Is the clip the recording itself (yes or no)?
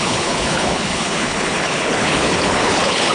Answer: no